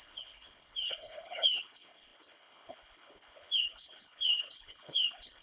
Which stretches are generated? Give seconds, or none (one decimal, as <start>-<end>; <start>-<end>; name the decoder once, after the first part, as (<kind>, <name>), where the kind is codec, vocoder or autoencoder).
0.0-5.4 (codec, HILCodec)